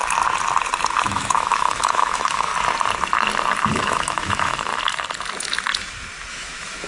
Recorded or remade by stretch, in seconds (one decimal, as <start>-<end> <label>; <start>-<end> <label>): 0.0-1.0 recorded; 1.0-2.5 remade; 2.5-3.7 recorded; 3.7-4.7 remade; 4.7-6.3 recorded; 6.3-6.9 remade